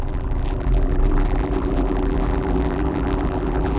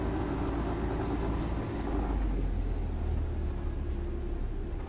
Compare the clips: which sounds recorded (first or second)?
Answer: second